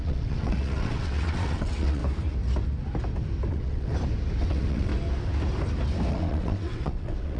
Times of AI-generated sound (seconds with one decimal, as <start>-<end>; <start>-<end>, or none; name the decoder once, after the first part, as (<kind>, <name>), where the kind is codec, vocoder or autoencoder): 0.0-2.0 (vocoder, WaveNeXt); 3.5-3.9; 4.4-4.9; 6.1-7.4